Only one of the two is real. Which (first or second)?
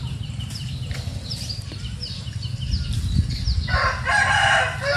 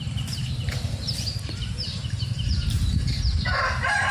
first